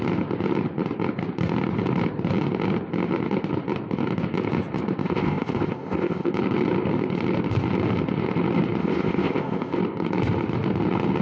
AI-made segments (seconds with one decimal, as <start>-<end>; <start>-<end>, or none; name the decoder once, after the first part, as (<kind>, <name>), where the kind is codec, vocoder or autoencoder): 5.0-6.3 (codec, ZipCodec); 8.8-9.8